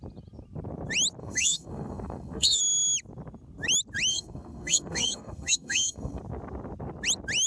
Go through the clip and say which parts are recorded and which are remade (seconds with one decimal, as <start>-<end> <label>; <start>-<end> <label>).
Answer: 0.0-1.2 recorded; 1.2-2.6 remade; 2.6-4.1 recorded; 4.1-6.2 remade; 6.2-7.5 recorded